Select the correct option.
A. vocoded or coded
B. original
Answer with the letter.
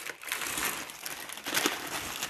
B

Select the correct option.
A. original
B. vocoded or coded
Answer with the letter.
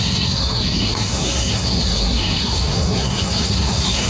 B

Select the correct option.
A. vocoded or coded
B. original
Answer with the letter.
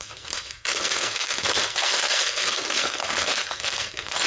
A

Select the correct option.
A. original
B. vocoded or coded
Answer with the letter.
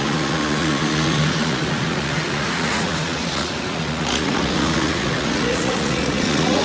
B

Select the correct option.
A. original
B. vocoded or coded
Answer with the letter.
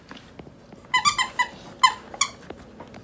A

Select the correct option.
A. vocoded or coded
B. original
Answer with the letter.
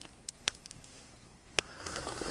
A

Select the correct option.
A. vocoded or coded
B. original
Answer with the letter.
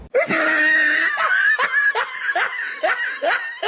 B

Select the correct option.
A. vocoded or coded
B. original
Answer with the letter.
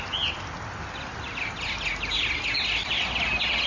B